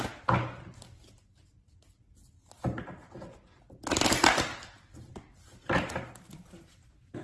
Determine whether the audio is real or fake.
fake